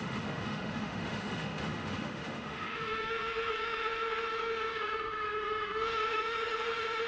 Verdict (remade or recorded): remade